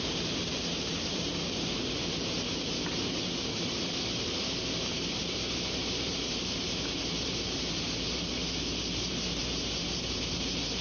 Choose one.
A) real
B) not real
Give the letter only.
B